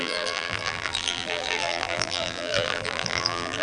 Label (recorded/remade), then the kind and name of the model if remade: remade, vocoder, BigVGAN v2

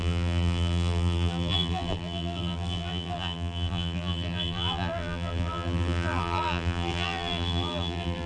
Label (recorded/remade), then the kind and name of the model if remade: remade, vocoder, BigVGAN v2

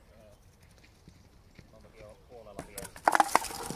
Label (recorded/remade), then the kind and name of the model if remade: recorded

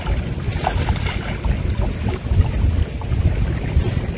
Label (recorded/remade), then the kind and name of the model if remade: recorded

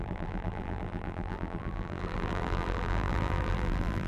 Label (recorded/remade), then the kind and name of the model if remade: remade, vocoder, BigVGAN v2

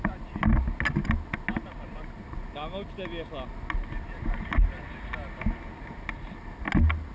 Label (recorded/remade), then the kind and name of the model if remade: recorded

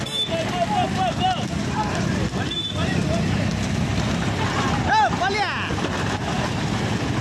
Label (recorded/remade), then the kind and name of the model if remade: recorded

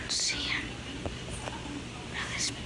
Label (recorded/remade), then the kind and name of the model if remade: remade, vocoder, BigVGAN v2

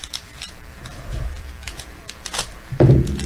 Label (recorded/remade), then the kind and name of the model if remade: remade, vocoder, BigVGAN v2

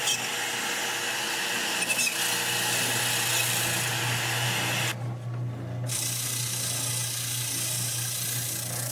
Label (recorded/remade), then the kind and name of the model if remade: recorded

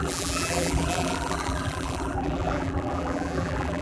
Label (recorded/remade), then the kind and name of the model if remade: remade, vocoder, BigVGAN v2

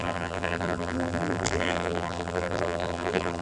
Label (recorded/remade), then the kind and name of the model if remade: remade, vocoder, BigVGAN v2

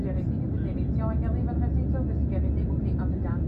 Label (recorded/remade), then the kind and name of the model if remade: recorded